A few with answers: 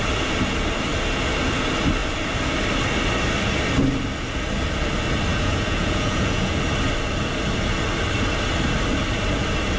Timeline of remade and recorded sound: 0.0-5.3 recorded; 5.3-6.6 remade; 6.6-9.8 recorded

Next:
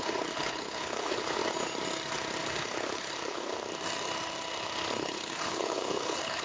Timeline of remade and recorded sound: 0.0-1.4 remade; 1.4-2.4 recorded; 2.4-3.5 remade; 3.5-4.9 recorded; 4.9-6.4 remade